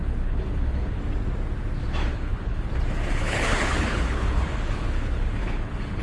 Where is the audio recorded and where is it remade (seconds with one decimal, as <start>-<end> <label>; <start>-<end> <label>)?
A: 0.0-1.0 remade; 1.0-2.0 recorded; 2.0-2.7 remade; 2.7-3.2 recorded; 3.2-6.0 remade